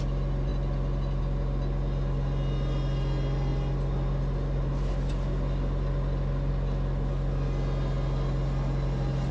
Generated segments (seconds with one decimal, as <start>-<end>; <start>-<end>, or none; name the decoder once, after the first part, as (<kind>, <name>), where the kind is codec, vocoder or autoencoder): none